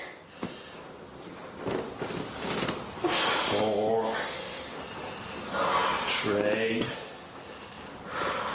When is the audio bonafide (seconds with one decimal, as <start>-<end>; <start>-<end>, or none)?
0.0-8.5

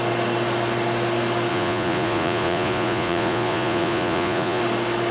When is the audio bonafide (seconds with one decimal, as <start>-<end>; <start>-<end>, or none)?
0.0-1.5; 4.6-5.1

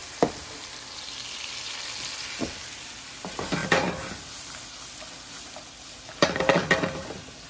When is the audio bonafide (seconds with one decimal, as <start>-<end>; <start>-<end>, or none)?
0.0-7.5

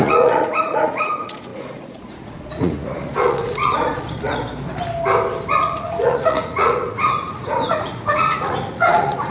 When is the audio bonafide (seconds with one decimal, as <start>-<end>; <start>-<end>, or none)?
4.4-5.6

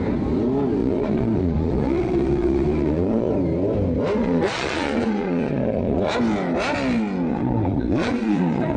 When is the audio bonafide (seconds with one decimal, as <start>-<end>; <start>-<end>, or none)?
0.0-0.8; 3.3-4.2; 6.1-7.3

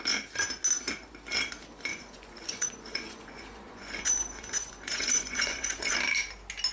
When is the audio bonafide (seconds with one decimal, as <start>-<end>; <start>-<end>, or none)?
0.0-1.9; 5.9-6.7